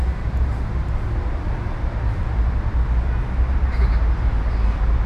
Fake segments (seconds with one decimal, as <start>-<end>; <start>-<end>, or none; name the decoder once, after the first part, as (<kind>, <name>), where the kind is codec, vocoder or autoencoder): 0.8-2.8 (vocoder, BigVGAN v2)